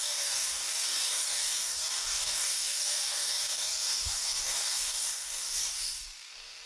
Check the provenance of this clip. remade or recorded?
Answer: remade